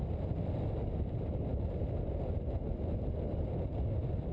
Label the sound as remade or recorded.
recorded